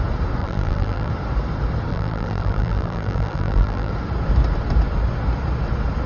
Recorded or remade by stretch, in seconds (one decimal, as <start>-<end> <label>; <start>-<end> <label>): 0.0-0.4 recorded; 0.4-1.1 remade; 1.1-1.9 recorded; 1.9-3.9 remade; 3.9-6.1 recorded